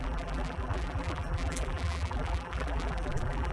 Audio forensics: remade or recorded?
remade